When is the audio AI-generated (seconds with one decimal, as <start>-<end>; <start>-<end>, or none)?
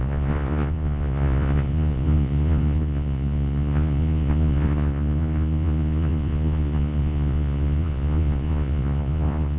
0.0-9.6